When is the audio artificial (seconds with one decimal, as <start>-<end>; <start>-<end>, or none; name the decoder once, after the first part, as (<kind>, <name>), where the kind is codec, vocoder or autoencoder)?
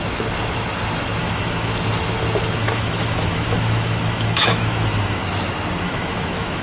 1.2-1.7 (autoencoder, DAC-VAE); 2.5-5.2; 5.8-6.6